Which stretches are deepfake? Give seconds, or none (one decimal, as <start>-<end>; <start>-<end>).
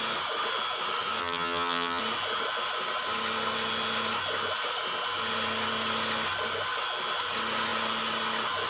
1.2-2.0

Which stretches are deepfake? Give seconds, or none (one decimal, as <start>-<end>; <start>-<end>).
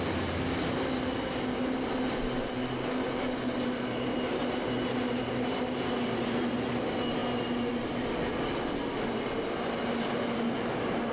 none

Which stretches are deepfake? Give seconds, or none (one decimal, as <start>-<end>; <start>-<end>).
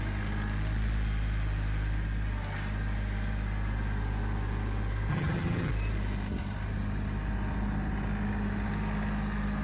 5.1-5.7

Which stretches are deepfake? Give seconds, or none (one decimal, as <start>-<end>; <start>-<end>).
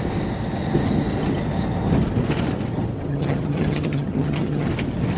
3.1-4.7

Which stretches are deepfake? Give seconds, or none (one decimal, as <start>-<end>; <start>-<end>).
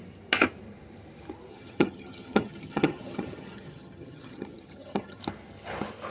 1.5-5.2